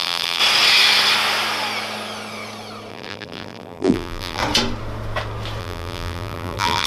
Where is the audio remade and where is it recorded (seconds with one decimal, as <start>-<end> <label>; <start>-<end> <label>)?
0.0-0.4 remade; 0.4-2.9 recorded; 2.9-4.4 remade; 4.4-5.6 recorded; 5.6-6.9 remade